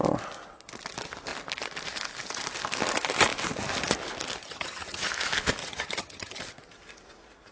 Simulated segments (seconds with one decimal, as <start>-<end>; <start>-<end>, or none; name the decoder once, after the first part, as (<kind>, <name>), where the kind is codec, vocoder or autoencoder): 4.4-5.1 (vocoder, HiFi-GAN); 5.6-6.4